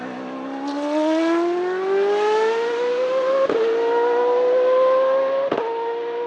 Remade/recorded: recorded